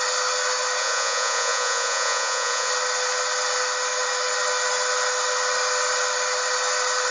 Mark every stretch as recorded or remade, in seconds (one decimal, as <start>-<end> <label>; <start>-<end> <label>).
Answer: 0.0-0.8 recorded; 0.8-2.7 remade; 2.7-7.1 recorded